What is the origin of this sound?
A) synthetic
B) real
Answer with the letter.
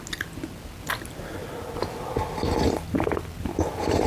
B